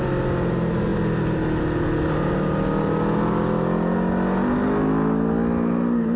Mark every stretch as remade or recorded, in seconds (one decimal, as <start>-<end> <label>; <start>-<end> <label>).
0.0-6.2 recorded